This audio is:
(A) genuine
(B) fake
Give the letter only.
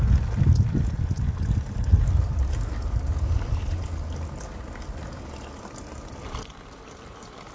A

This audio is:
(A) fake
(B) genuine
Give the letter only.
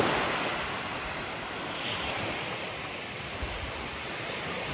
B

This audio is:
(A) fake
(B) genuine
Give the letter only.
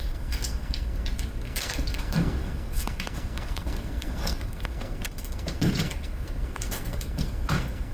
A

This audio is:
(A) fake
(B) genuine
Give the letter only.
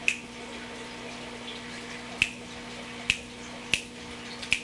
B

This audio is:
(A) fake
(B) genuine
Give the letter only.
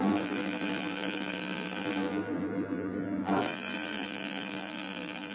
A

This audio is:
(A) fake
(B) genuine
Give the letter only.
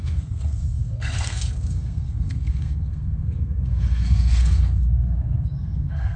A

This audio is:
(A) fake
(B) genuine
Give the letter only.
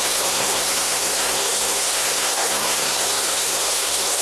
A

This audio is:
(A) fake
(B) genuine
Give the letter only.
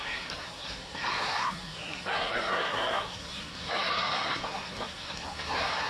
A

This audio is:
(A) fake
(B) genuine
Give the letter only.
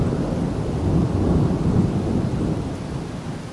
B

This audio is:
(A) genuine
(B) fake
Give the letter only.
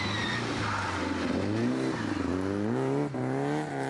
A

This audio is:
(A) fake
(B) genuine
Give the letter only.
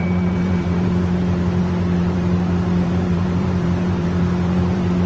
A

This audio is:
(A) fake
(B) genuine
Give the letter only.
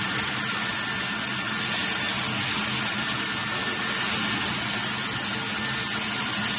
B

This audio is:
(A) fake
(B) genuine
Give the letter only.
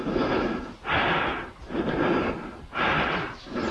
B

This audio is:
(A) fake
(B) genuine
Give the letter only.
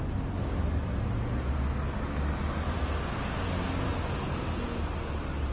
B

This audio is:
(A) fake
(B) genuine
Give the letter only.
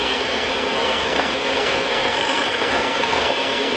A